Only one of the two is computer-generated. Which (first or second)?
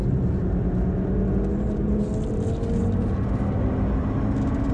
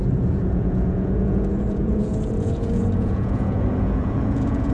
second